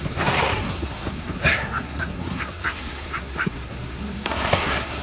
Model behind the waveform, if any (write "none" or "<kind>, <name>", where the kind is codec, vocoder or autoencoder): codec, SNAC